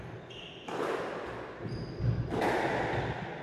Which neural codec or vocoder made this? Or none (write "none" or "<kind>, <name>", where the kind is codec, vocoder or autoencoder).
none